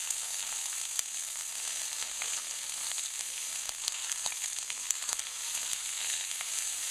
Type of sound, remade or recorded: remade